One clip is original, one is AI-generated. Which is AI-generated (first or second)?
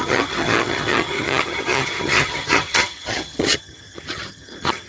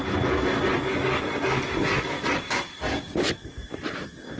first